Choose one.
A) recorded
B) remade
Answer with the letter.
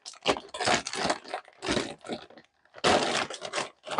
A